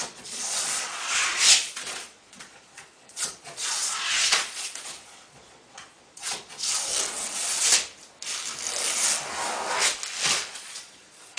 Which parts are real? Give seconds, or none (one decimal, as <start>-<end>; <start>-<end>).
6.9-10.5